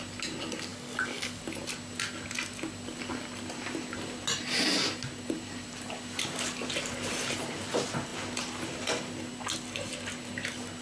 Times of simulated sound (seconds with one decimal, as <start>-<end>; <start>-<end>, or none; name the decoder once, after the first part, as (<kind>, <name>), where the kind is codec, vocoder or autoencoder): 0.7-1.4 (codec, DAC)